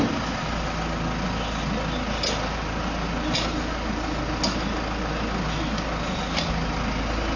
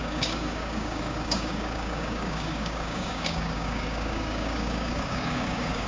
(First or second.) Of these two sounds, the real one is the first